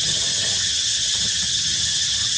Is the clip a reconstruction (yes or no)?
yes